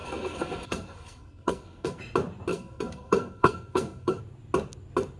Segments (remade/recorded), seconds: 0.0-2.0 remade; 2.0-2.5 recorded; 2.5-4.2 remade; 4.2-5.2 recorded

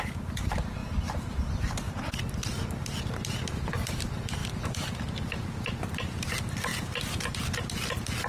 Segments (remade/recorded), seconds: 0.0-0.8 recorded; 0.8-1.9 remade; 1.9-4.4 recorded; 4.4-5.0 remade; 5.0-8.3 recorded